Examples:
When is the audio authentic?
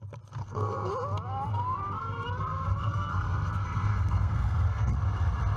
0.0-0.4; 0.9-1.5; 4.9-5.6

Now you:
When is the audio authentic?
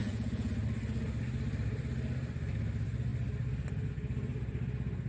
0.5-5.1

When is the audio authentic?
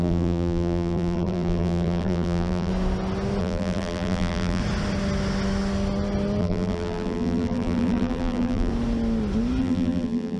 2.7-3.4; 4.6-6.4; 8.7-9.6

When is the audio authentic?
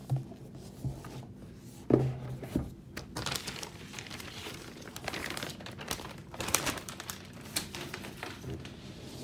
0.0-3.6